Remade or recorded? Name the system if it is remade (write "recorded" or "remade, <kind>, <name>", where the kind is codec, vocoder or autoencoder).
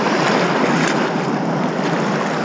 recorded